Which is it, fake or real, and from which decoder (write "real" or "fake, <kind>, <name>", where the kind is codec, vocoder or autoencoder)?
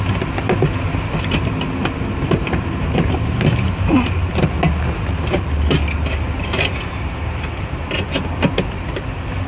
real